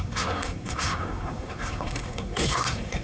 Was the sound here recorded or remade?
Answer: remade